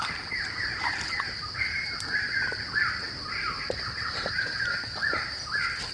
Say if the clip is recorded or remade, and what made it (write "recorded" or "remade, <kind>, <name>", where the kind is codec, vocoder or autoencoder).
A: remade, vocoder, BigVGAN v2